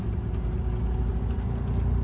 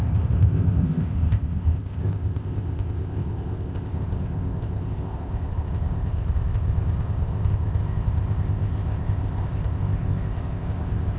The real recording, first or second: first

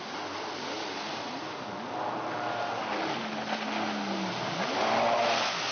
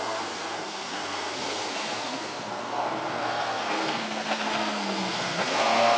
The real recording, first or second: first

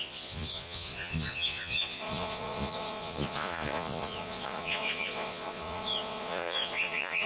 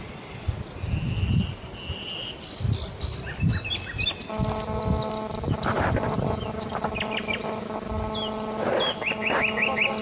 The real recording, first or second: second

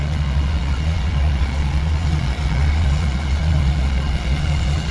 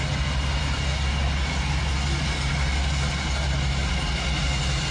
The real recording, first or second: second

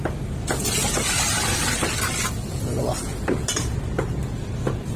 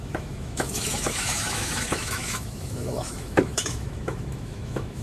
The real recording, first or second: first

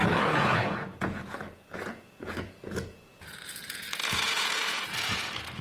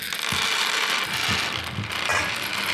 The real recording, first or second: second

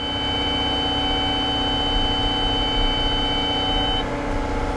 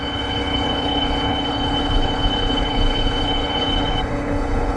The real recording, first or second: first